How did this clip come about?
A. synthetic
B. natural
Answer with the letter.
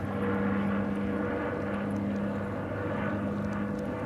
B